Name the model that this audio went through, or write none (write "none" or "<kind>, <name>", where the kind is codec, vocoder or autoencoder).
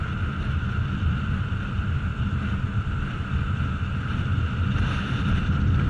none